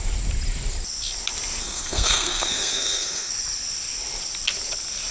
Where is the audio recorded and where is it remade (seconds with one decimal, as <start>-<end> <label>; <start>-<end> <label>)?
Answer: 0.0-1.6 recorded; 1.6-3.3 remade; 3.3-5.1 recorded